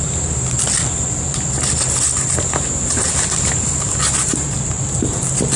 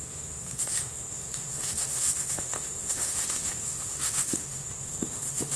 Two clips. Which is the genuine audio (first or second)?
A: first